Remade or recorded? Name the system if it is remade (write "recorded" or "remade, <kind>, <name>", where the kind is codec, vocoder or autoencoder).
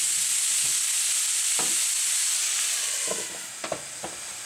recorded